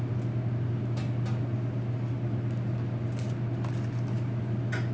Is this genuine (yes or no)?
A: yes